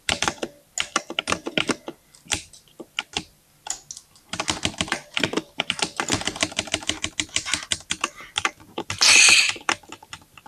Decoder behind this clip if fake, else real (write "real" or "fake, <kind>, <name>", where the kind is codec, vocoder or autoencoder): real